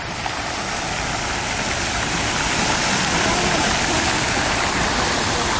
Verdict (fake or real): real